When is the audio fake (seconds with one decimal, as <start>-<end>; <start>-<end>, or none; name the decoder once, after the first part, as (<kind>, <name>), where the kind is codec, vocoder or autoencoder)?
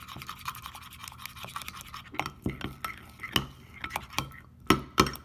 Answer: none